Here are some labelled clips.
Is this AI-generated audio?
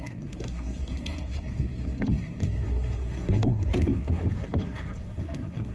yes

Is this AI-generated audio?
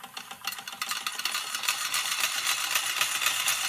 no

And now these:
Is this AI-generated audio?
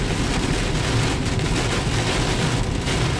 no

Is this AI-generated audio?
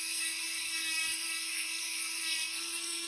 yes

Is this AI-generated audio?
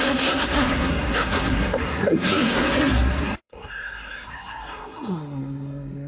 yes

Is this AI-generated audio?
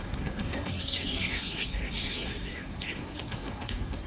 yes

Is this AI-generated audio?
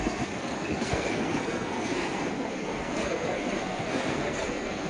yes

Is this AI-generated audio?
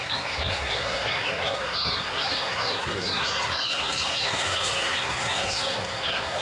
yes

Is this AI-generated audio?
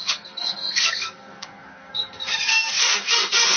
yes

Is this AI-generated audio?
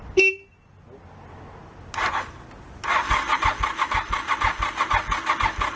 no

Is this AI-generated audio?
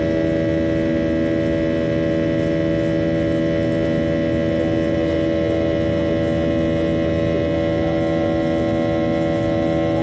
no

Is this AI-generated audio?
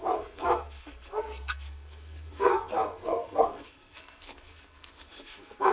yes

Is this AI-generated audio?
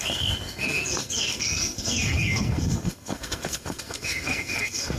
yes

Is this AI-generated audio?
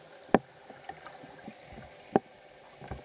no